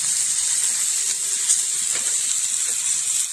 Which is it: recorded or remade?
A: recorded